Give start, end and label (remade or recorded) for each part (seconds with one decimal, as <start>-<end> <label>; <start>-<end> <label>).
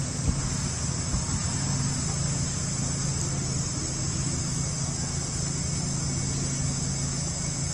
0.0-4.0 recorded; 4.0-4.7 remade; 4.7-7.7 recorded